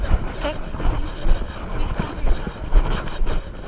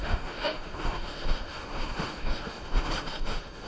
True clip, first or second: first